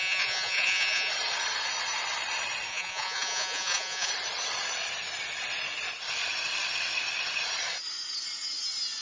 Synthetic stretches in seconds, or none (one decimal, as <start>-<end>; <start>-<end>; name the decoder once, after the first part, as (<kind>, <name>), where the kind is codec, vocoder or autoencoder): 0.0-1.1 (vocoder, Vocos); 2.7-4.1